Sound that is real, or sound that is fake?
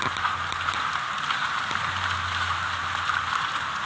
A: real